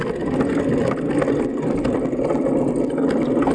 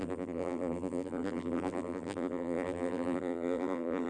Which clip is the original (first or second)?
first